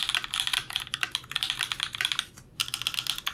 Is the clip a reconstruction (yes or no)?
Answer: yes